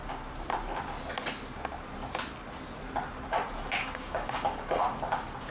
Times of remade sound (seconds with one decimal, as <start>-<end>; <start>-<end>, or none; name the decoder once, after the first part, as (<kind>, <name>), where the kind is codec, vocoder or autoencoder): 3.8-4.8 (codec, DAC)